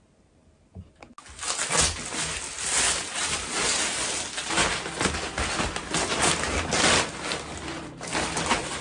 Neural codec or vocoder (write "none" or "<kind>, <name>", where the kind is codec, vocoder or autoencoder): none